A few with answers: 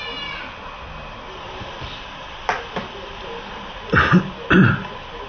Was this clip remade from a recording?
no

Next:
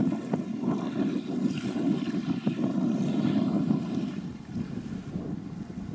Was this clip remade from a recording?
no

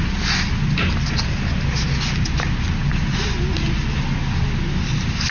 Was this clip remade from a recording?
no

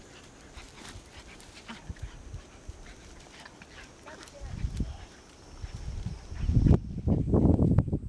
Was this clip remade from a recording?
no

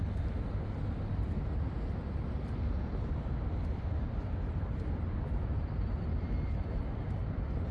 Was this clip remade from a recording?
no